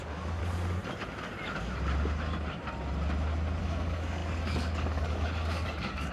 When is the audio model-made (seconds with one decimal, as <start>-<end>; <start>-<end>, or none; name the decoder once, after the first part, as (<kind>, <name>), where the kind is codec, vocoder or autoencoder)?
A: 0.0-0.4 (codec, DAC); 3.6-6.1